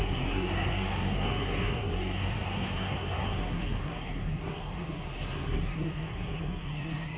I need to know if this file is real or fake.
fake